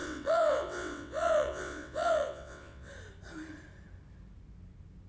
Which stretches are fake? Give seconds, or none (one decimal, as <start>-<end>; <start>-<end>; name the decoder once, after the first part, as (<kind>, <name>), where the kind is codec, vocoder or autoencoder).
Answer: 0.0-2.9 (vocoder, WaveNeXt)